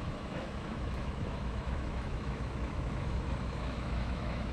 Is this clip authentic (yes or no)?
no